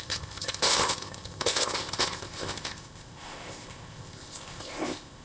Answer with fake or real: fake